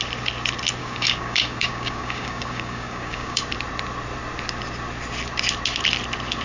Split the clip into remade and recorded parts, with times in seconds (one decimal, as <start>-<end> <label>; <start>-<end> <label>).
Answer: 0.0-0.8 recorded; 0.8-3.4 remade; 3.4-6.4 recorded